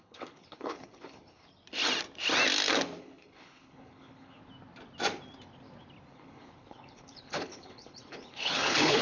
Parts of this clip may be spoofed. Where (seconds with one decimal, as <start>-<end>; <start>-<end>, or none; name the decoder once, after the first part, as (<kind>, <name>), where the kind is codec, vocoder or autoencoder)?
0.0-1.5 (codec, HILCodec); 3.0-4.4; 6.1-9.0